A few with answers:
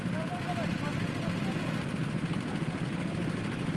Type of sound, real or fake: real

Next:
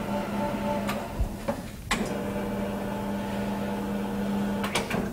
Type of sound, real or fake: real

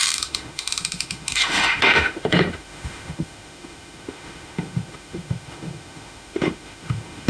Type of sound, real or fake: fake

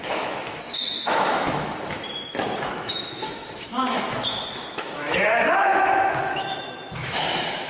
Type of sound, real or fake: fake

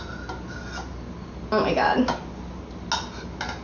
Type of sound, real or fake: real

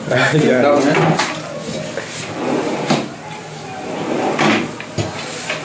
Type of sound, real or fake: real